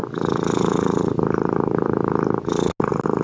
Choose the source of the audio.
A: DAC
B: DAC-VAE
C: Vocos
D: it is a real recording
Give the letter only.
D